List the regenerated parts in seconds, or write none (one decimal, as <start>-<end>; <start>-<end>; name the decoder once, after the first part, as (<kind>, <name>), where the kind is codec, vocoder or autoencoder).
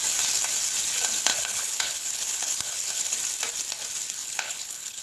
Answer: 1.3-3.1 (codec, HILCodec); 4.2-5.0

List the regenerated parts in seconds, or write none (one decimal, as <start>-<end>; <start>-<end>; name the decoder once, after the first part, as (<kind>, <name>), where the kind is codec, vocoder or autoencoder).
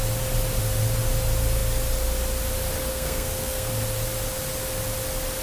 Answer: 2.9-3.7 (codec, SNAC)